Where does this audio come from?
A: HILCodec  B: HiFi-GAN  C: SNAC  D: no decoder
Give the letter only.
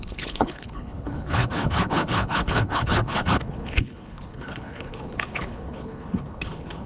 A